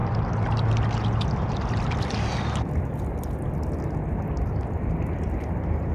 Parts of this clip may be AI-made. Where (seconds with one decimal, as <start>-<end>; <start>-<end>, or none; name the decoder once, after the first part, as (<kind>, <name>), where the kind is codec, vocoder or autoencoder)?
none